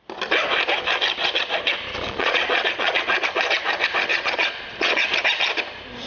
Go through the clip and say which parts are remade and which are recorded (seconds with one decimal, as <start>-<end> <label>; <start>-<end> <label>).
0.0-2.1 recorded; 2.1-3.1 remade; 3.1-4.1 recorded; 4.1-5.1 remade; 5.1-6.1 recorded